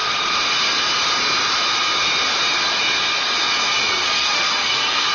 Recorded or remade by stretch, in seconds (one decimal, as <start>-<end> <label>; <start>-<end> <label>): 0.0-3.8 recorded; 3.8-5.1 remade